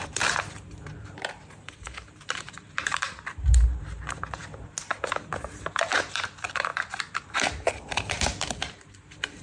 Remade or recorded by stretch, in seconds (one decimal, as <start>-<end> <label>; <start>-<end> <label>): 0.0-4.4 remade; 4.4-5.5 recorded; 5.5-9.4 remade

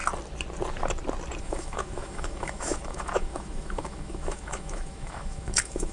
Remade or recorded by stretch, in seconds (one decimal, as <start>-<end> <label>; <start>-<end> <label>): 0.0-1.4 recorded; 1.4-5.9 remade